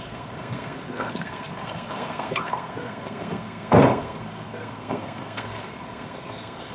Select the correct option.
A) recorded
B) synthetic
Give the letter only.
B